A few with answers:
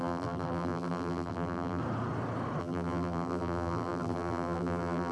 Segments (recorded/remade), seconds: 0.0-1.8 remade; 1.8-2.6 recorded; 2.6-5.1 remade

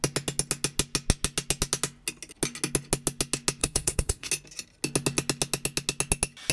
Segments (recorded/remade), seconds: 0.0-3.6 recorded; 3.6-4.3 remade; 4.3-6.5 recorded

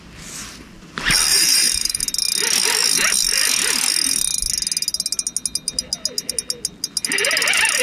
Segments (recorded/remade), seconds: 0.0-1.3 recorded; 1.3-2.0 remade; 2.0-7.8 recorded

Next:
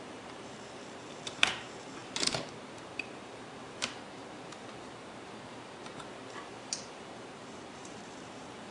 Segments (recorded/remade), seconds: 0.0-8.7 remade